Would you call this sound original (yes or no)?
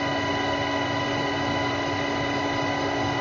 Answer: yes